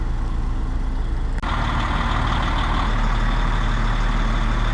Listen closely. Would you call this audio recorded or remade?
recorded